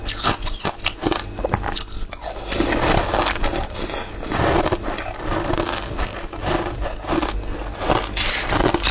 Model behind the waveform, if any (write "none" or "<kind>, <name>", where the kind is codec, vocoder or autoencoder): none